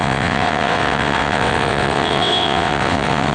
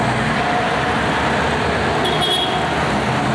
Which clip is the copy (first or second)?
first